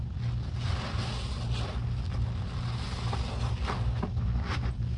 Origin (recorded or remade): recorded